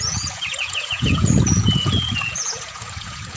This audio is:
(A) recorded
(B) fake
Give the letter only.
B